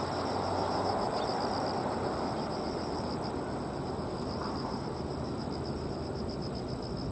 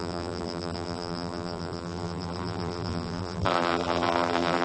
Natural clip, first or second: first